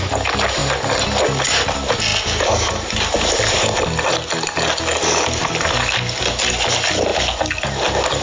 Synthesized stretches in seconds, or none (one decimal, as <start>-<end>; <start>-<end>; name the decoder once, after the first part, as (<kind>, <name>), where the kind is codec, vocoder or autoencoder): none